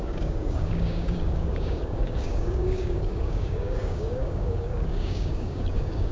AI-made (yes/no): yes